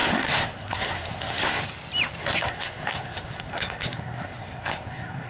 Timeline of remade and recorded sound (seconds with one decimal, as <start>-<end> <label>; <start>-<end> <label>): 0.0-1.6 remade; 1.6-2.2 recorded; 2.2-5.3 remade